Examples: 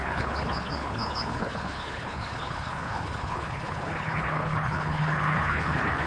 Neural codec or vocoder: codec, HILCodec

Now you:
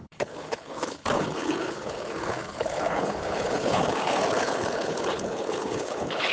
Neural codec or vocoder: codec, HILCodec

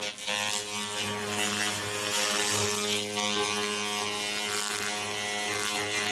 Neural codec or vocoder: none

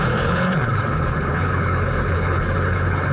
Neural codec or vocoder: codec, HILCodec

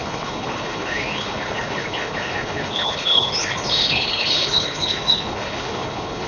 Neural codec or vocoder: codec, HILCodec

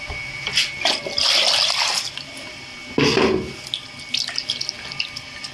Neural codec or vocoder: none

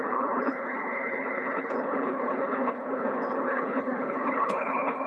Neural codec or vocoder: codec, HILCodec